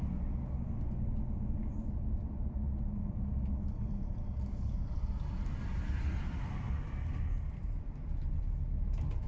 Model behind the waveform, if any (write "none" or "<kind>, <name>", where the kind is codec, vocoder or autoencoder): none